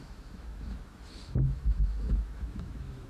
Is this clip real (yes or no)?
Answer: no